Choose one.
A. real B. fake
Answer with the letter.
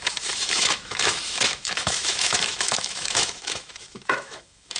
B